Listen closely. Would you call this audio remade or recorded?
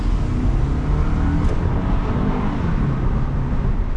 recorded